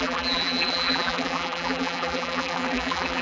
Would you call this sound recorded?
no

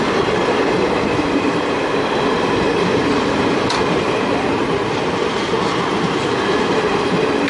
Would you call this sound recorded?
no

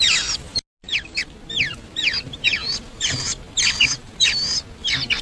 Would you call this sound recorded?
yes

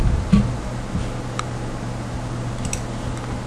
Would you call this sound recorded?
yes